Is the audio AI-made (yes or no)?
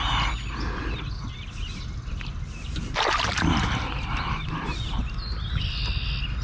no